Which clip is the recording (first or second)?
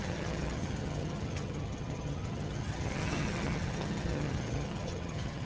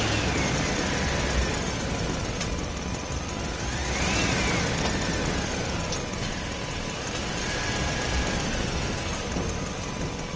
second